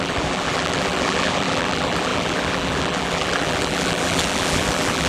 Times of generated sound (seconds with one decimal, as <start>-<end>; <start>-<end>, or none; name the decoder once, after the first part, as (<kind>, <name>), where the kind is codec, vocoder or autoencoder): 0.0-5.1 (vocoder, BigVGAN v2)